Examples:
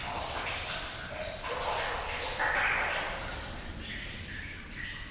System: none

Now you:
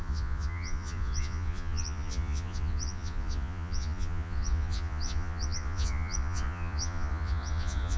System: vocoder, Vocos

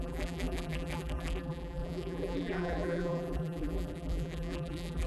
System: vocoder, BigVGAN v2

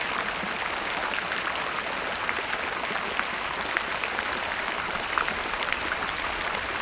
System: none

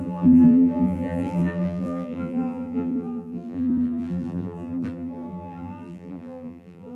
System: vocoder, BigVGAN v2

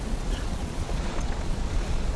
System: vocoder, Vocos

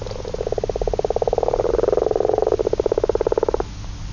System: none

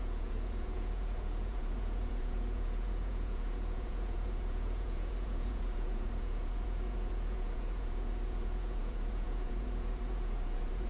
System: vocoder, Vocos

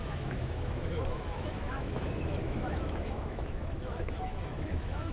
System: autoencoder, DAC-VAE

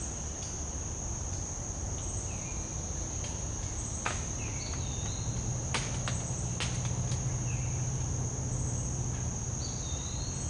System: none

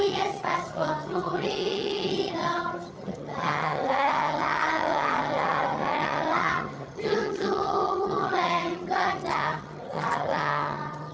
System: vocoder, HiFi-GAN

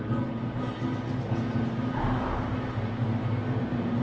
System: none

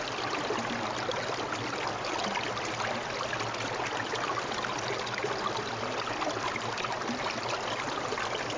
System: none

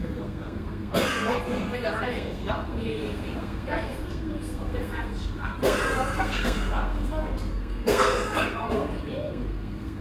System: codec, SNAC